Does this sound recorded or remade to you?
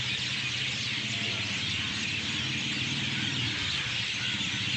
remade